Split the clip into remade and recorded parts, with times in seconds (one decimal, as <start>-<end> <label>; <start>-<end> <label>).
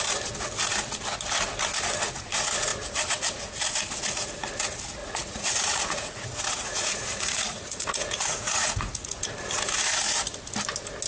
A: 0.0-5.0 recorded; 5.0-9.2 remade; 9.2-11.1 recorded